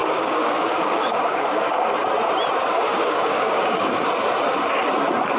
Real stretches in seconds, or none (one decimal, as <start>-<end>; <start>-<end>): 1.9-2.7; 4.1-5.4